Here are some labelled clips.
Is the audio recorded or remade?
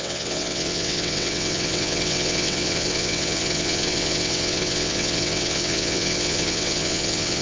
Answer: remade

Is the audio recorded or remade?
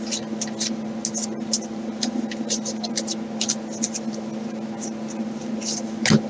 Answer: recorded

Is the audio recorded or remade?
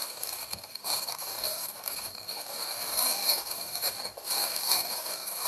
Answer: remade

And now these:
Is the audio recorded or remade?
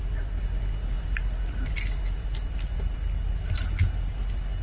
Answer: recorded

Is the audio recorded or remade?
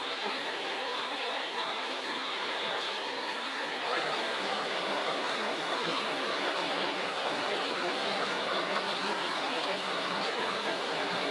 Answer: remade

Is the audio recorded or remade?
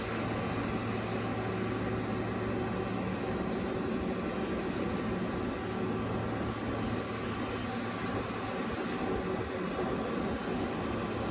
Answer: recorded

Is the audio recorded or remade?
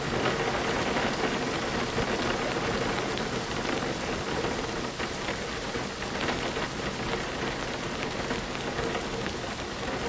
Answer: recorded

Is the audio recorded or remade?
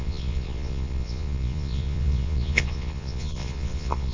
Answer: remade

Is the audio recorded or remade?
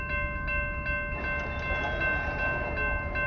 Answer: recorded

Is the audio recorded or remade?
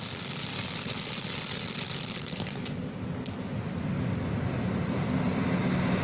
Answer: recorded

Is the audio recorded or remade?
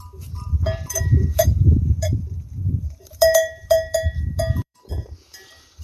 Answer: remade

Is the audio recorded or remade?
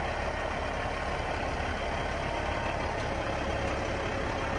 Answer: recorded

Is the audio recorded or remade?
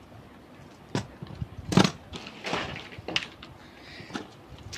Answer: recorded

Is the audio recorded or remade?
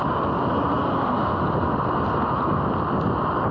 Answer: recorded